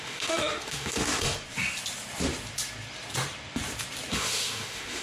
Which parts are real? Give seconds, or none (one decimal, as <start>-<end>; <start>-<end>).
1.1-4.1